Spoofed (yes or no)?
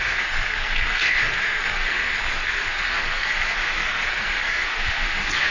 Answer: yes